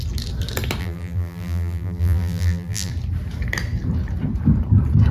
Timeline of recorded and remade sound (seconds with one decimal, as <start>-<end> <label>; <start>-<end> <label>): 0.0-0.8 recorded; 0.8-2.9 remade; 2.9-5.1 recorded